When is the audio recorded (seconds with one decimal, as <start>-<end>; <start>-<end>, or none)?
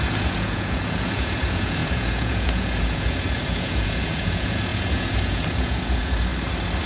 6.3-6.9